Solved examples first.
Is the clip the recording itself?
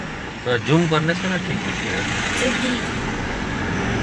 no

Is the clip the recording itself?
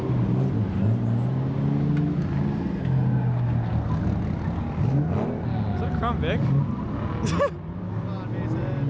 yes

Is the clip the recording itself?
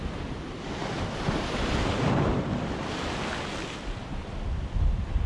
yes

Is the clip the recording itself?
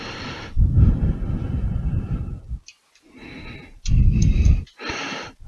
yes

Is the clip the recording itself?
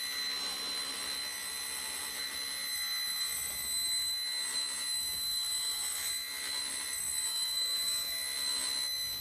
yes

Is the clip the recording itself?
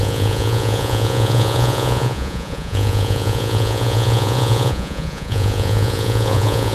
no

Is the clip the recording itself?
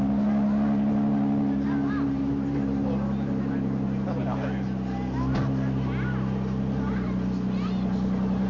yes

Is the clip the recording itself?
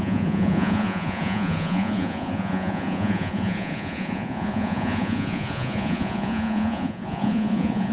no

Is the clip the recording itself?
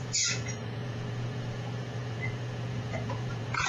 no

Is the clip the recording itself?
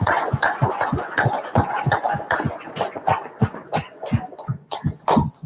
no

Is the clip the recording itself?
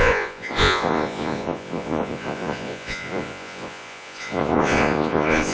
no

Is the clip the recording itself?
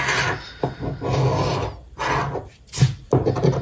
yes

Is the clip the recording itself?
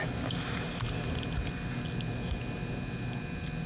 yes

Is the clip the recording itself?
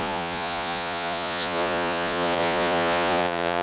no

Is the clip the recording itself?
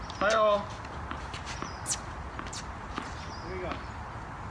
yes